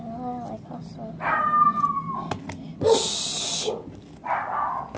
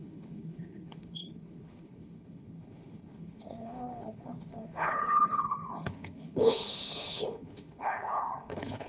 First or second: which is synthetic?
second